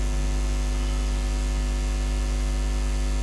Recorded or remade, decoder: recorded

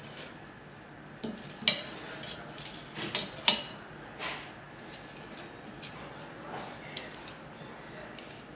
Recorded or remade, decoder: recorded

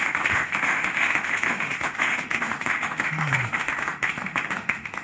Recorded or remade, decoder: remade, autoencoder, DAC-VAE